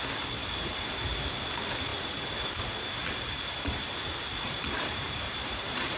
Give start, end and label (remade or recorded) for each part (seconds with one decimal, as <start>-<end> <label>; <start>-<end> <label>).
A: 0.0-0.4 recorded; 0.4-1.0 remade; 1.0-3.0 recorded; 3.0-3.9 remade; 3.9-4.3 recorded; 4.3-6.0 remade